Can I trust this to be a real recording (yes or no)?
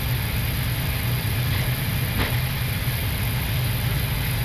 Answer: yes